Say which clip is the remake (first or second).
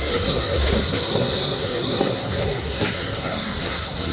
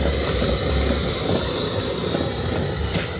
first